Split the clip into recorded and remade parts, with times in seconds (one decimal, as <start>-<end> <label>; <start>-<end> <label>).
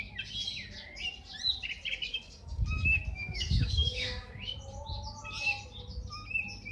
0.0-2.1 recorded; 2.1-4.3 remade; 4.3-6.7 recorded